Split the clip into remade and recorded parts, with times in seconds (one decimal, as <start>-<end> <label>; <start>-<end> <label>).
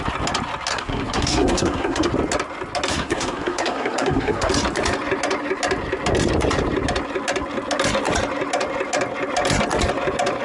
0.0-0.7 recorded; 0.7-2.1 remade; 2.1-2.9 recorded; 2.9-4.5 remade; 4.5-10.4 recorded